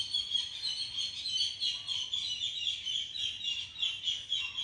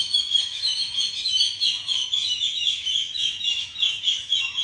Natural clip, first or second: first